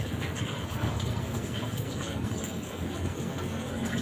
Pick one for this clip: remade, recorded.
remade